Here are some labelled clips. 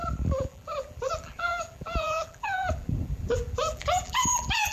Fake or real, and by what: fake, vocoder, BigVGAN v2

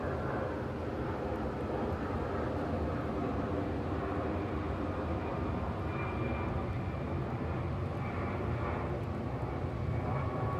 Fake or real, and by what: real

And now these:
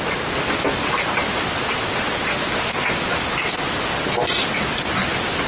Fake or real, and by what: real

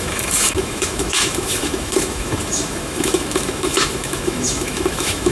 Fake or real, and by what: fake, autoencoder, DAC-VAE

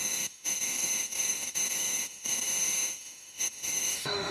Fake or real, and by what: fake, autoencoder, DAC-VAE